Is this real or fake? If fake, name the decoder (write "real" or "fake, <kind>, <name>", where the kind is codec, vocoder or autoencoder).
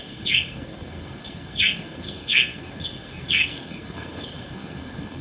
fake, codec, SNAC